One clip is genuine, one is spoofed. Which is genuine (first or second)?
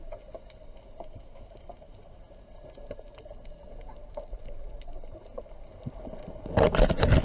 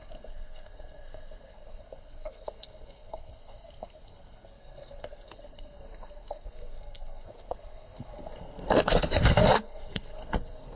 first